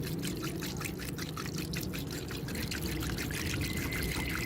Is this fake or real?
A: real